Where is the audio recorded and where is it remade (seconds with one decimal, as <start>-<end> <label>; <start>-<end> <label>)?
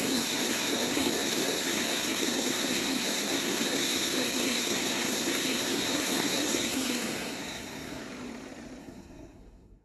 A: 0.0-8.0 remade; 8.0-8.8 recorded; 8.8-9.8 remade